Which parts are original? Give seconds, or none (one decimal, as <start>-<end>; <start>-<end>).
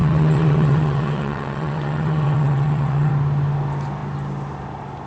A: 3.1-5.1